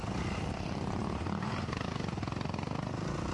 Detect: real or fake real